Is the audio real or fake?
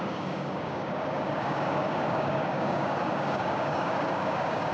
fake